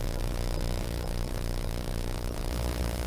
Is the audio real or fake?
fake